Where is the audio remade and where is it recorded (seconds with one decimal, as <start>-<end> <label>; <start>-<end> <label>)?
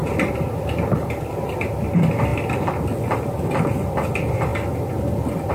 0.0-5.5 recorded